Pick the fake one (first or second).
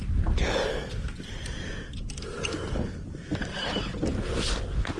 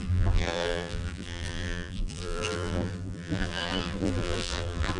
second